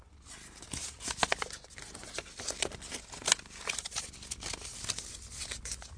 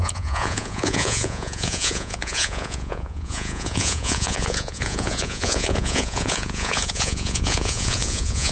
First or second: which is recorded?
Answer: first